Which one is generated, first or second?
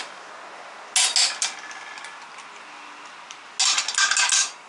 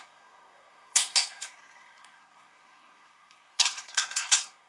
second